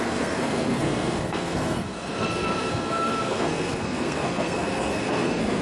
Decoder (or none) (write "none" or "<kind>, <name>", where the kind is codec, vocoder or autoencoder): codec, SNAC